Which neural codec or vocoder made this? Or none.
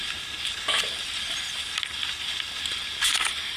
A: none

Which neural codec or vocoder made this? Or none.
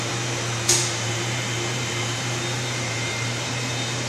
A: vocoder, BigVGAN v2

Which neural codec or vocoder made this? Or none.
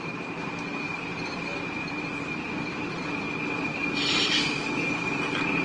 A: vocoder, BigVGAN v2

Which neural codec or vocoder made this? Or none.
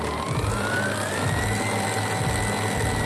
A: none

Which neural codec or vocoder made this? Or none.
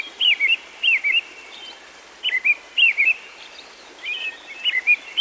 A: vocoder, BigVGAN v2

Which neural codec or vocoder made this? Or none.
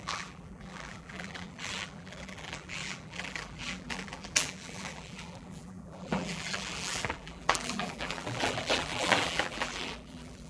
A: vocoder, BigVGAN v2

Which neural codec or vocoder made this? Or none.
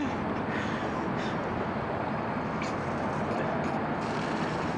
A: none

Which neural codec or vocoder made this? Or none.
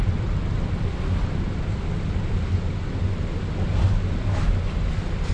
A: none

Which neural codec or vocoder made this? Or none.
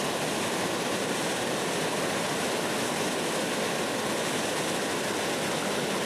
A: none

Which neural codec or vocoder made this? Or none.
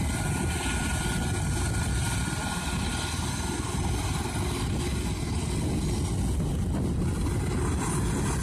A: none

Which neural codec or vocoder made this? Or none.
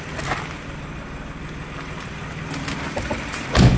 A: none